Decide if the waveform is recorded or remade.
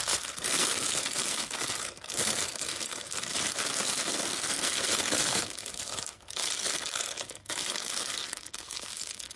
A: remade